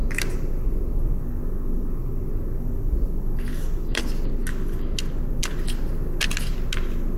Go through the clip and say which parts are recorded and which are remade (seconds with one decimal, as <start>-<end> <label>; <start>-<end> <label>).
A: 0.0-7.2 recorded